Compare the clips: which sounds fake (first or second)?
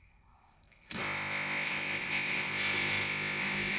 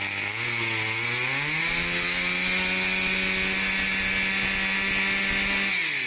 first